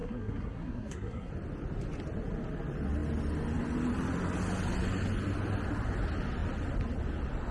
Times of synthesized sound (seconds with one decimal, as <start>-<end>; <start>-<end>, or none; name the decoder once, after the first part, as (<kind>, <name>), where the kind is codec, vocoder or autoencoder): 0.0-1.3 (codec, SNAC)